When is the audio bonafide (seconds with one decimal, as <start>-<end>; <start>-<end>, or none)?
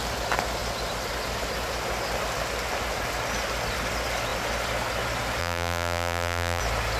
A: 0.0-5.4; 6.6-7.0